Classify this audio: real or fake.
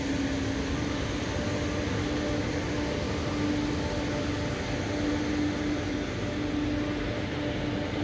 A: real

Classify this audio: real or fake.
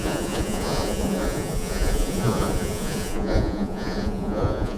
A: fake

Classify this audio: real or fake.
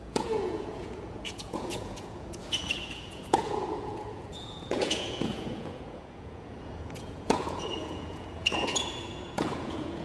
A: fake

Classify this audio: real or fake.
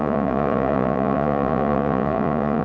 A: fake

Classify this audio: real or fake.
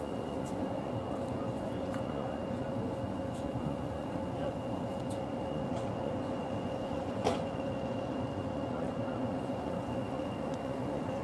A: fake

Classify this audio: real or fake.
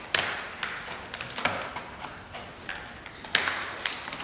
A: real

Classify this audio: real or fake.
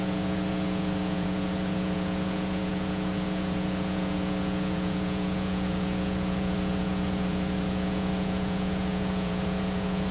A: fake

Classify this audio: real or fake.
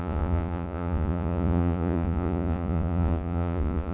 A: fake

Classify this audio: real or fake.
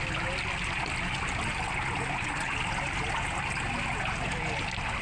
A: real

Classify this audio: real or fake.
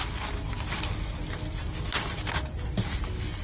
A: real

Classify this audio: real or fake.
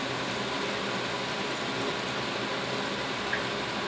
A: real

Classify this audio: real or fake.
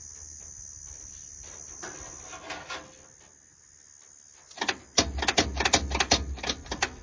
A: real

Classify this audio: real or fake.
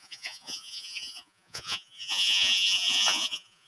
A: fake